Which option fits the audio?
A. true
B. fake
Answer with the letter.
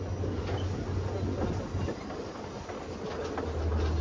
A